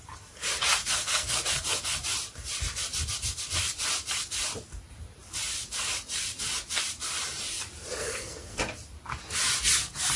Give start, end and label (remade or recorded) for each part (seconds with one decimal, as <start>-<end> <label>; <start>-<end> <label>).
0.0-0.8 recorded; 0.8-1.4 remade; 1.4-8.0 recorded; 8.0-8.6 remade; 8.6-10.2 recorded